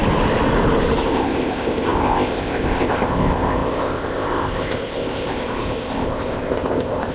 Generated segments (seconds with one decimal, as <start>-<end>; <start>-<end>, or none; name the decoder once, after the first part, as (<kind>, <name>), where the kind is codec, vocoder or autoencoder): 1.0-7.1 (codec, ZipCodec)